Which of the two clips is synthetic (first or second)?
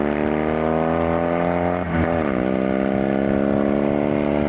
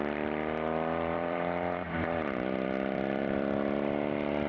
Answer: second